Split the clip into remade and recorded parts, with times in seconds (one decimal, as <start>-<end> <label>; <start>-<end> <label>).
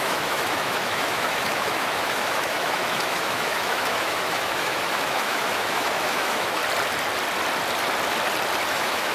0.0-6.6 remade; 6.6-8.7 recorded; 8.7-9.1 remade